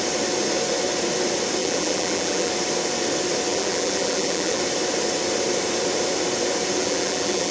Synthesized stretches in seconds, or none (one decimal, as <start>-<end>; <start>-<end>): 1.6-2.5; 3.5-4.6; 6.8-7.5